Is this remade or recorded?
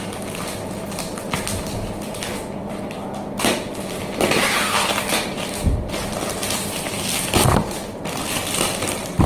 recorded